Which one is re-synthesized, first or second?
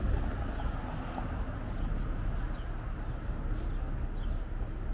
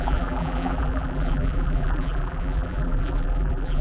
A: second